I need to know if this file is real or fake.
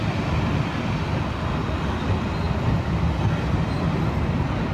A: real